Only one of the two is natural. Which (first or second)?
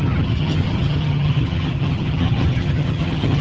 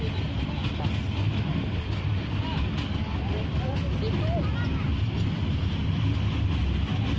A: second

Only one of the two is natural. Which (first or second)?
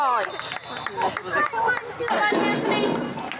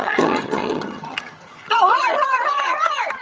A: first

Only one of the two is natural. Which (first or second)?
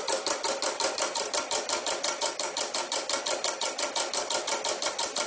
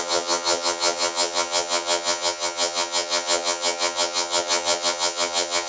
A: first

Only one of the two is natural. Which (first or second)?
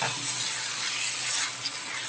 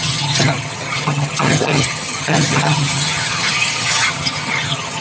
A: first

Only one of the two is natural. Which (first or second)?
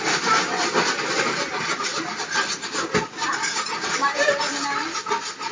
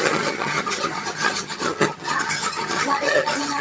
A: first